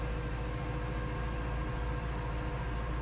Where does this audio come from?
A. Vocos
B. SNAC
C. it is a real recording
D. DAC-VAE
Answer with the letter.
C